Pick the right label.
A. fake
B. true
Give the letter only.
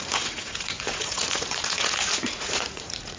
A